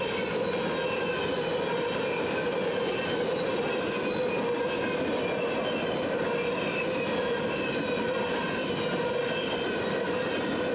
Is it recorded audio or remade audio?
recorded